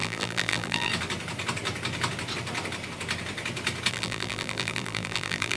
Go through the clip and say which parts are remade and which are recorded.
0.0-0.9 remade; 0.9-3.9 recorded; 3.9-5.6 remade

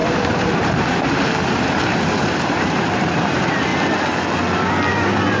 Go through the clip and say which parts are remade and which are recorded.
0.0-3.7 remade; 3.7-4.9 recorded; 4.9-5.4 remade

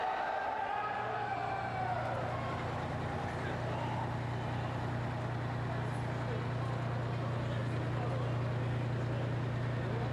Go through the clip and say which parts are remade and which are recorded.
0.0-10.1 recorded

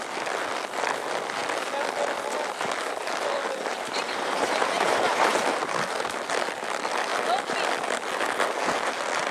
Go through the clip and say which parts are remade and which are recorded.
0.0-3.7 recorded; 3.7-5.4 remade; 5.4-9.3 recorded

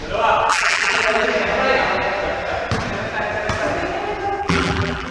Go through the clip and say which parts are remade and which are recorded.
0.0-0.5 recorded; 0.5-1.3 remade; 1.3-4.4 recorded; 4.4-5.1 remade

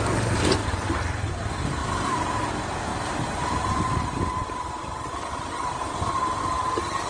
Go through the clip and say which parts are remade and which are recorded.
0.0-0.6 recorded; 0.6-1.3 remade; 1.3-1.8 recorded; 1.8-2.5 remade; 2.5-2.9 recorded; 2.9-5.8 remade; 5.8-7.1 recorded

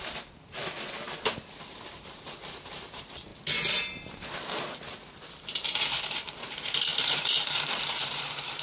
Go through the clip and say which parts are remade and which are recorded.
0.0-0.6 remade; 0.6-1.5 recorded; 1.5-3.3 remade; 3.3-5.3 recorded; 5.3-8.6 remade

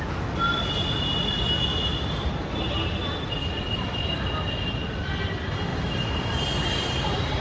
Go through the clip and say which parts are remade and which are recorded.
0.0-3.4 recorded; 3.4-3.9 remade; 3.9-5.7 recorded; 5.7-7.4 remade